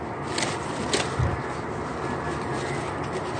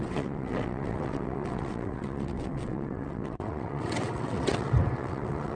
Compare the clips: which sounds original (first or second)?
first